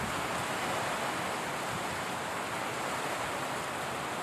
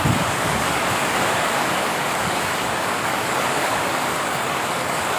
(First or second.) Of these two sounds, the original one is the first